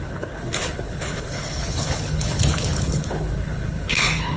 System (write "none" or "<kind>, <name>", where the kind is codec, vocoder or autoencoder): codec, HILCodec